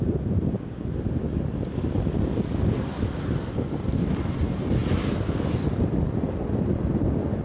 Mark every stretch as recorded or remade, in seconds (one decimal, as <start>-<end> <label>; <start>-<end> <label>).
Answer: 0.0-7.4 remade